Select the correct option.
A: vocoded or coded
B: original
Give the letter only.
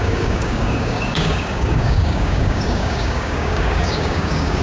A